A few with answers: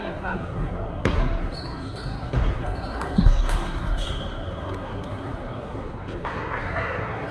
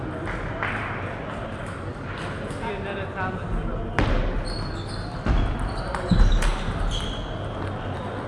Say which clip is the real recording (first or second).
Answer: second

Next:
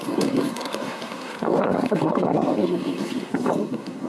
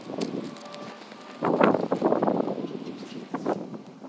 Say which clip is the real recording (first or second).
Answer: second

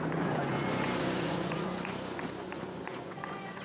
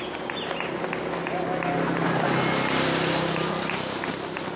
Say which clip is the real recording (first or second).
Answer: second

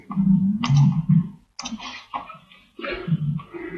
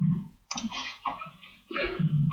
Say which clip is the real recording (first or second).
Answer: first